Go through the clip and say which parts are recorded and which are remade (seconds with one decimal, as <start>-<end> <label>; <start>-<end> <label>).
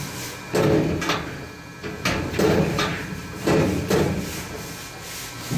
0.0-1.8 recorded; 1.8-4.2 remade; 4.2-5.6 recorded